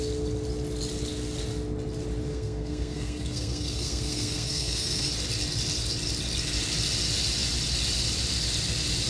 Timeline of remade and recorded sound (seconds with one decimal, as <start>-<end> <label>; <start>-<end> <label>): 0.0-2.3 recorded; 2.3-5.1 remade; 5.1-9.1 recorded

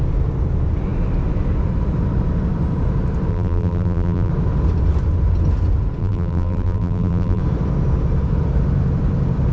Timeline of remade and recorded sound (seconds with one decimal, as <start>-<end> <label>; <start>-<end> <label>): 0.0-3.3 recorded; 3.3-4.3 remade; 4.3-6.0 recorded; 6.0-7.4 remade; 7.4-9.5 recorded

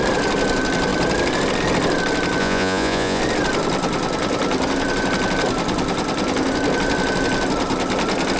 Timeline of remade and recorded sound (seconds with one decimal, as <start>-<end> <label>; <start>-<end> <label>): 0.0-2.4 recorded; 2.4-3.2 remade; 3.2-8.4 recorded